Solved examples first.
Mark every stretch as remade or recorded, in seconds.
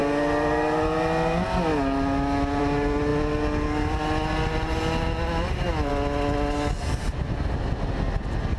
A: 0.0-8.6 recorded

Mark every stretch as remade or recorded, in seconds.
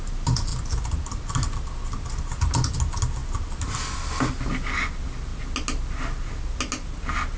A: 0.0-7.4 recorded